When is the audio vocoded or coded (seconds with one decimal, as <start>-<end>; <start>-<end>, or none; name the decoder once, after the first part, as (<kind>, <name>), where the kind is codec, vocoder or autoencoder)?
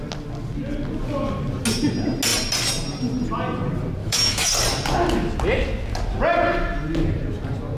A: 4.0-4.5 (autoencoder, DAC-VAE)